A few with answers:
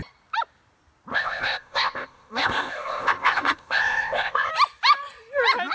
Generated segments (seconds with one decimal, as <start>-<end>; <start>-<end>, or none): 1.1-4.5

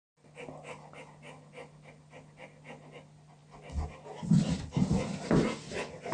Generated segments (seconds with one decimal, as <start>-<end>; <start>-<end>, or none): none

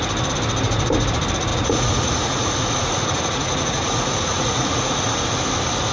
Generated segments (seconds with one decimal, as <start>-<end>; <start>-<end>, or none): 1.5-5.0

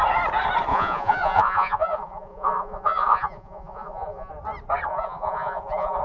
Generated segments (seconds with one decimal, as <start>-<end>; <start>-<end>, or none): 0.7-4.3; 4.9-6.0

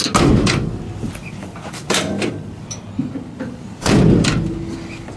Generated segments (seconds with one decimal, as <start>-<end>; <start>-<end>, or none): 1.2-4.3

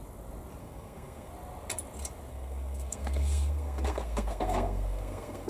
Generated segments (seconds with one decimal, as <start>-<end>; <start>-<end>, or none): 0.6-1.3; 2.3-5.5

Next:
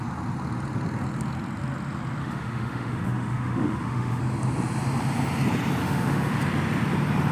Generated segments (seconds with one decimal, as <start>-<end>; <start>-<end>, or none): 2.2-4.2; 5.8-6.4